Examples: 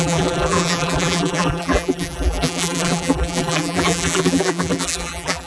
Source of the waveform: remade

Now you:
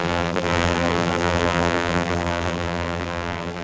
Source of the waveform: remade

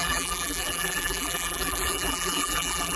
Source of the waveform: remade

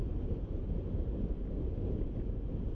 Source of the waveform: recorded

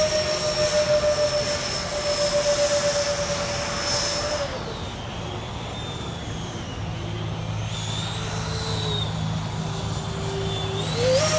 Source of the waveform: recorded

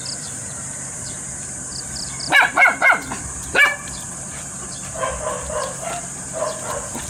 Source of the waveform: remade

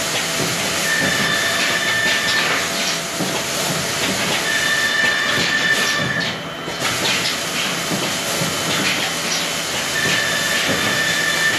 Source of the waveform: recorded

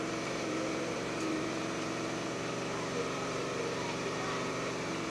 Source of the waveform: remade